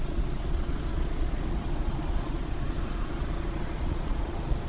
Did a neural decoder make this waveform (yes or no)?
yes